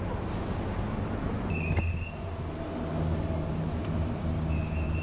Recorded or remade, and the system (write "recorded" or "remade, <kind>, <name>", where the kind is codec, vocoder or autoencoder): recorded